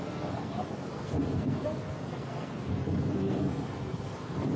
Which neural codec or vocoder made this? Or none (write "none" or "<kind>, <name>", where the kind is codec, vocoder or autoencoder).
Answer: codec, SNAC